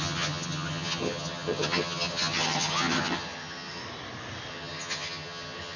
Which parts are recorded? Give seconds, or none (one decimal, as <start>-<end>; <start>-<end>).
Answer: 3.8-4.5